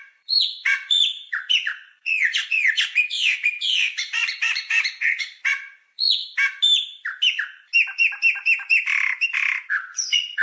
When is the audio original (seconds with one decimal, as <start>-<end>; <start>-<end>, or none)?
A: 6.2-9.7